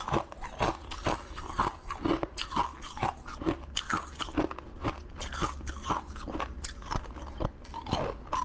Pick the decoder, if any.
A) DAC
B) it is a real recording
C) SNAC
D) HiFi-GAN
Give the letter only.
B